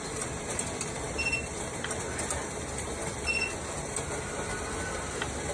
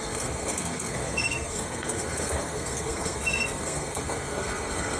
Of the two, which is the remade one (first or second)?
second